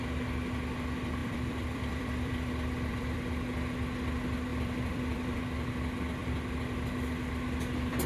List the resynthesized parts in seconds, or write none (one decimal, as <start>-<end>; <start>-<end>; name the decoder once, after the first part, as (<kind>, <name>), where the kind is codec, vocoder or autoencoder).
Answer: 1.2-3.3 (vocoder, BigVGAN v2); 4.5-5.4

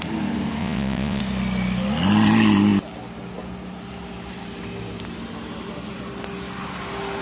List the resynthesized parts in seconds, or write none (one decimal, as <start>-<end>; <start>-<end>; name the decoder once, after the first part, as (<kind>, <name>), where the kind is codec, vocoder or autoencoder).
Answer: 0.6-1.2 (vocoder, Vocos)

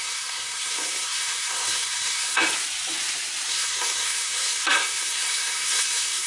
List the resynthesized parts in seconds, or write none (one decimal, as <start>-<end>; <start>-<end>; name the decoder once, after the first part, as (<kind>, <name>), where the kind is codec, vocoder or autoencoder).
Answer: 0.0-2.4 (codec, SNAC); 3.5-6.3